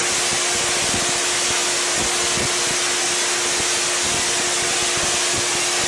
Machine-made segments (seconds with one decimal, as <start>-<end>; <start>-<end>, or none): none